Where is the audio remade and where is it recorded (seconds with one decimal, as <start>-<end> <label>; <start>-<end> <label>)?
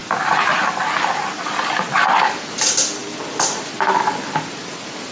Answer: 0.0-0.8 remade; 0.8-3.0 recorded; 3.0-3.7 remade; 3.7-5.1 recorded